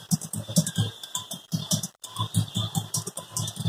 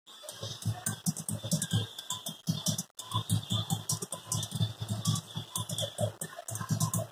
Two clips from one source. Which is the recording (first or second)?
second